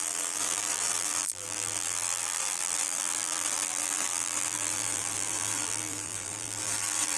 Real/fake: fake